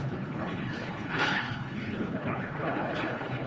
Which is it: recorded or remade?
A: remade